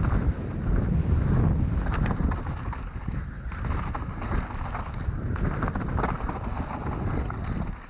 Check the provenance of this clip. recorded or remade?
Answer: recorded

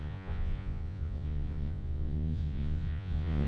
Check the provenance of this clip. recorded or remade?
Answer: remade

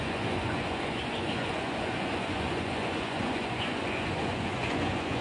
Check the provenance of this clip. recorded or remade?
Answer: remade